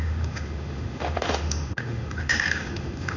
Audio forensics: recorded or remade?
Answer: remade